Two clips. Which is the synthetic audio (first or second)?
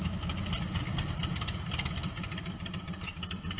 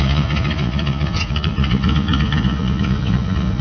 second